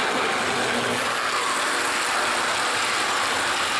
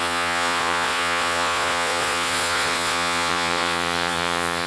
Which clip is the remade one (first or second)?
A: second